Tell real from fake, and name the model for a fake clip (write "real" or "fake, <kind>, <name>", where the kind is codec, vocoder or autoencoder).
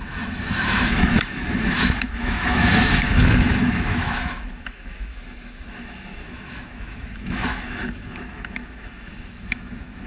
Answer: fake, autoencoder, DAC-VAE